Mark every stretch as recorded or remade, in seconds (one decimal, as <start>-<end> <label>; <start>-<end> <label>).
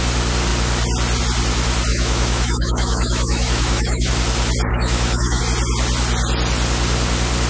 0.0-1.9 recorded; 1.9-4.1 remade; 4.1-4.7 recorded; 4.7-5.4 remade; 5.4-7.5 recorded